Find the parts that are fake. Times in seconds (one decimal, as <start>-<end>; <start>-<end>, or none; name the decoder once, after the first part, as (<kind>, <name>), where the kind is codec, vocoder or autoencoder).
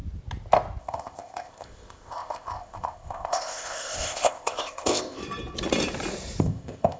0.8-5.2 (codec, ZipCodec); 6.4-7.0